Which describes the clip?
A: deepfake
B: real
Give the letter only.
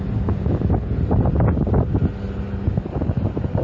B